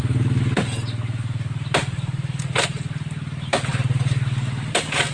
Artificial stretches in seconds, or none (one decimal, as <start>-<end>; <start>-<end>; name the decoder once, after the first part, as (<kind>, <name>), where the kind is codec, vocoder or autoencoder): 1.8-2.6 (vocoder, BigVGAN v2)